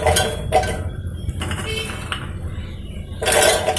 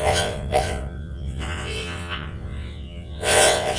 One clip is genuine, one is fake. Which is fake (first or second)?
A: second